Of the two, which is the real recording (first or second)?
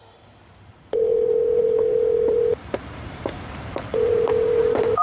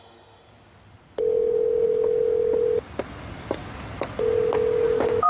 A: second